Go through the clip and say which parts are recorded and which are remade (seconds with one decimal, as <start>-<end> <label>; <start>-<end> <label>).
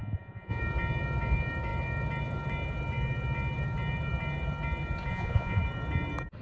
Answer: 0.0-0.6 remade; 0.6-5.1 recorded; 5.1-5.6 remade; 5.6-6.4 recorded